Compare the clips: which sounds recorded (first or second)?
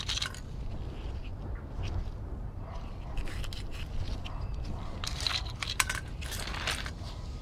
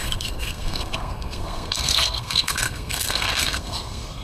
first